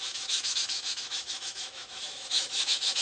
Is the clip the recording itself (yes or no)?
no